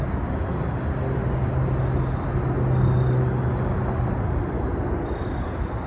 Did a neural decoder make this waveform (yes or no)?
no